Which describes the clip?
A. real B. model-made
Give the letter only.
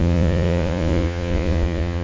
B